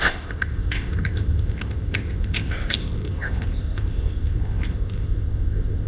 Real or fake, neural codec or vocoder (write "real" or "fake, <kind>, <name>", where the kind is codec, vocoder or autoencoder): fake, codec, ZipCodec